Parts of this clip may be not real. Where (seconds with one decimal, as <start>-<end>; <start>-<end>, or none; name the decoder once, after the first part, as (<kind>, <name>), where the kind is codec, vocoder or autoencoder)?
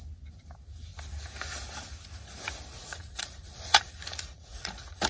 2.7-5.1 (vocoder, Vocos)